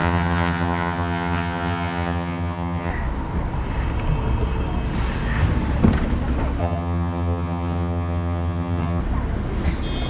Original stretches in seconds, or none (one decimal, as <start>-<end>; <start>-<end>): 2.9-6.6; 9.0-10.1